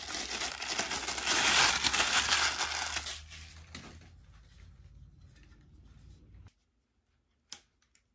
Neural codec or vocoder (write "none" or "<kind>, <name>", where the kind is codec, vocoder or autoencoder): none